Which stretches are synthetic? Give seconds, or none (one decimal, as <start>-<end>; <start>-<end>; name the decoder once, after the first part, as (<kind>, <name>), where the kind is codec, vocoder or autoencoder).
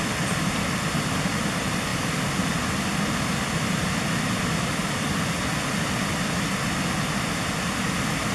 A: none